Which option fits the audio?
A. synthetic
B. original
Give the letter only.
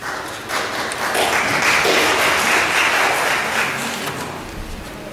B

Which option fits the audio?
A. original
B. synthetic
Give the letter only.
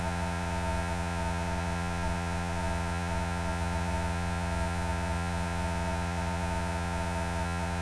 B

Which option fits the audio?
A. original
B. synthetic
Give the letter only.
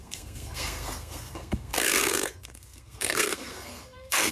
B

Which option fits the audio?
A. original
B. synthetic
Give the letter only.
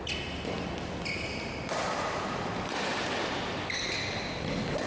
A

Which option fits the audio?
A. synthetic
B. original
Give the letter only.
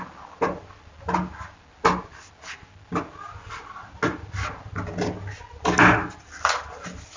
B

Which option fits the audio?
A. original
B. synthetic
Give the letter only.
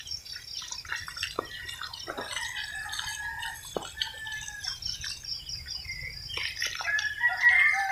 A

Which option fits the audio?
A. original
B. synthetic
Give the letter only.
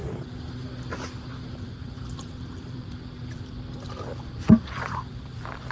B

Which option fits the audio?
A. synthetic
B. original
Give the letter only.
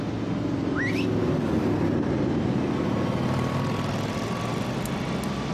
B